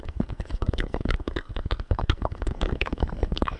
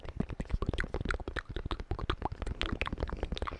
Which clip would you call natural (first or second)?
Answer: second